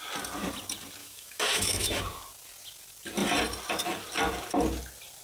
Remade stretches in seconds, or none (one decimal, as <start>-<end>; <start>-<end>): 1.0-2.0